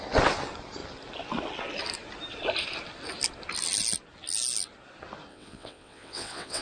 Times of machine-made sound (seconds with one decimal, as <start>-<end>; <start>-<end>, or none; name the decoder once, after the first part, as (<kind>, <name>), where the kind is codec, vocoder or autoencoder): 5.3-6.6 (vocoder, WaveNeXt)